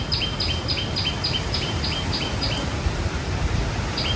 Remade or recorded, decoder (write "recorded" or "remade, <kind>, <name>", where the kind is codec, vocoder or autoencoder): recorded